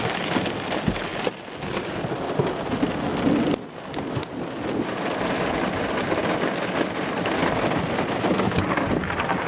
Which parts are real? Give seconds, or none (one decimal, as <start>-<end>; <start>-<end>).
0.0-9.5